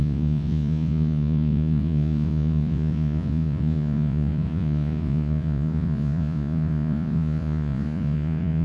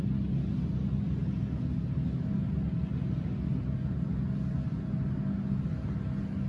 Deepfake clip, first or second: first